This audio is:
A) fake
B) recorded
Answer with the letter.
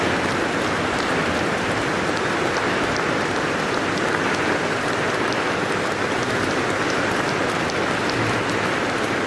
B